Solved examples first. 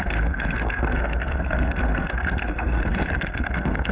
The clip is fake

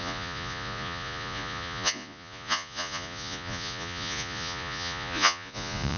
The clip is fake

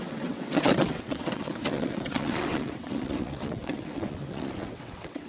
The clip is fake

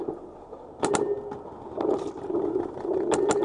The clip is real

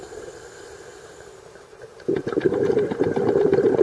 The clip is real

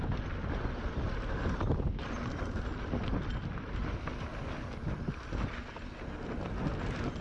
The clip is real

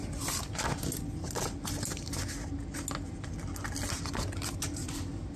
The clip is real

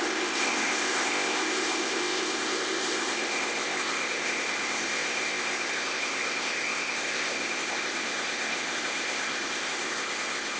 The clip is fake